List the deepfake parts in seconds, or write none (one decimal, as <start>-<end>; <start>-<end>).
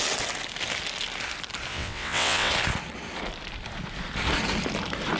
1.7-2.5